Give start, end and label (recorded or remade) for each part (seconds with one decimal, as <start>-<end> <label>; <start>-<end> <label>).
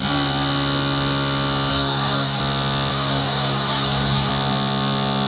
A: 0.0-1.7 recorded; 1.7-2.4 remade; 2.4-2.9 recorded; 2.9-4.3 remade; 4.3-5.3 recorded